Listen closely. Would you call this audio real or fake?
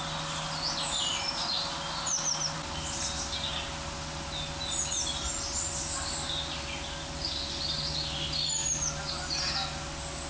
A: real